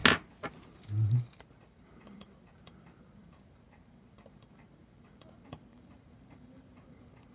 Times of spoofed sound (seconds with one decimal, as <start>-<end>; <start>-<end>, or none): 0.6-7.3